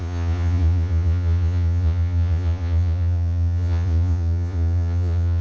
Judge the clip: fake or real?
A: fake